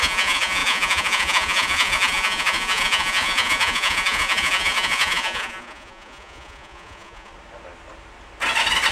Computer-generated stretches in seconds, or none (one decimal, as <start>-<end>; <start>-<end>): 0.0-7.3